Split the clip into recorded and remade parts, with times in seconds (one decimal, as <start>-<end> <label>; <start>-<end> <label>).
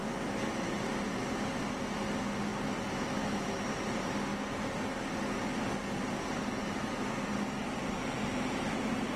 0.0-9.2 recorded